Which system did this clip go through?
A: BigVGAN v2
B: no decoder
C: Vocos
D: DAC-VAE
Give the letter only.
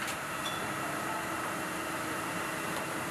A